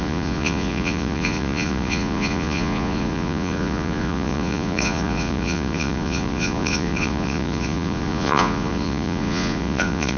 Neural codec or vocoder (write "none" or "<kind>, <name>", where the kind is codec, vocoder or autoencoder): vocoder, Vocos